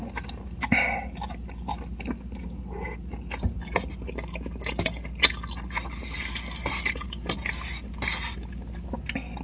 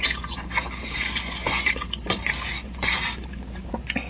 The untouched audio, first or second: first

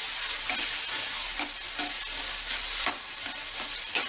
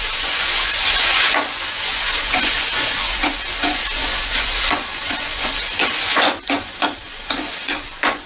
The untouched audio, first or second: first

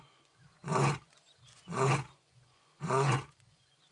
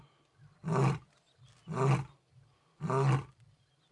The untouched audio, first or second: second